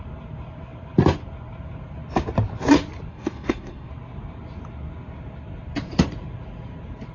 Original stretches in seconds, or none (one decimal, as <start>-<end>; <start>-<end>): 0.0-3.1; 3.9-7.1